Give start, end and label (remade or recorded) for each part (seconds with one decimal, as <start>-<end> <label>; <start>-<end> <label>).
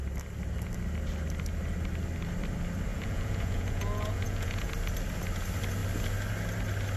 0.0-2.9 recorded; 2.9-4.7 remade; 4.7-7.0 recorded